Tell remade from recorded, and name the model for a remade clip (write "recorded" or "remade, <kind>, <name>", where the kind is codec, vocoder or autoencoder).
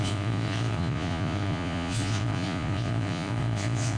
remade, vocoder, Vocos